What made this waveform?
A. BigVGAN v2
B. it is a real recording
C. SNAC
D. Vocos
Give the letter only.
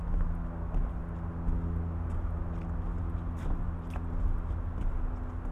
B